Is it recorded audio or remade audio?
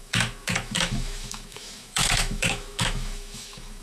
remade